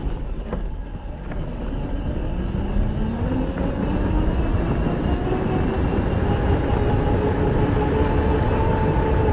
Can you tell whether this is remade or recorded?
recorded